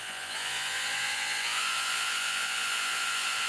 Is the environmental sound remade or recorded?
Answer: remade